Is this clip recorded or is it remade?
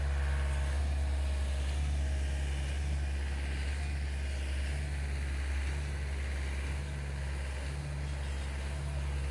recorded